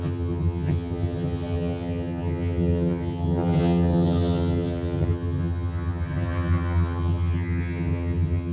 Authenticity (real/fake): fake